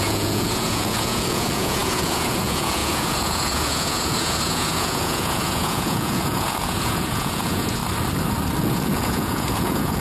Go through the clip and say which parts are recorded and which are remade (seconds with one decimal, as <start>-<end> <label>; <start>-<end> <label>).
0.0-7.8 remade; 7.8-8.6 recorded; 8.6-10.0 remade